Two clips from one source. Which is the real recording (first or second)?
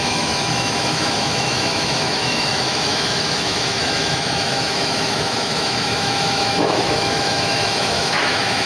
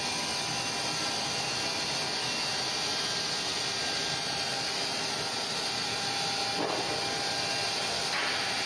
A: second